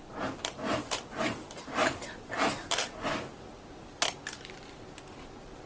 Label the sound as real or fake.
real